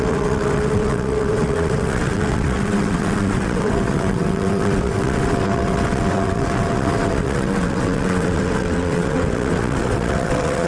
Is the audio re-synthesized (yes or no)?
yes